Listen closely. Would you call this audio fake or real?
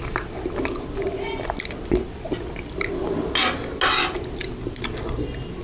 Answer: real